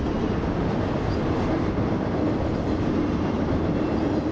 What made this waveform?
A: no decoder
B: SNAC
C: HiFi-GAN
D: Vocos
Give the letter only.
A